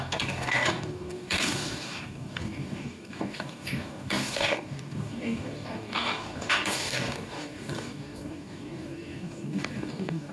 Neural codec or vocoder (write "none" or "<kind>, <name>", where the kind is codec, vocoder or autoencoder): codec, DAC